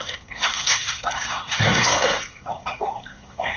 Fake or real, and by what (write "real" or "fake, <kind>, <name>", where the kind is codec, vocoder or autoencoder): fake, codec, SNAC